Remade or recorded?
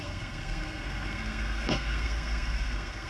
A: remade